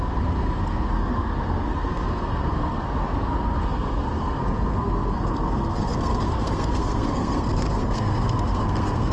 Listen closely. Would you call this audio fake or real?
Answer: fake